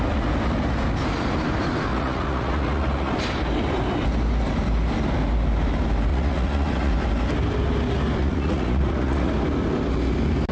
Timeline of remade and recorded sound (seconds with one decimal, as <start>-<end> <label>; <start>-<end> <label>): 0.0-1.9 recorded; 1.9-3.1 remade; 3.1-6.1 recorded; 6.1-6.9 remade; 6.9-8.2 recorded; 8.2-9.3 remade; 9.3-10.5 recorded